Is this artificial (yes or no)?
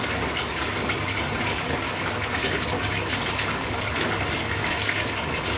yes